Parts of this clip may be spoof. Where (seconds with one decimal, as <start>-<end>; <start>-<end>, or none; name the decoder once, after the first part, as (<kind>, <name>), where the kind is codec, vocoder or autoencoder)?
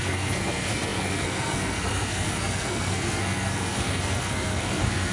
0.0-5.1 (codec, SNAC)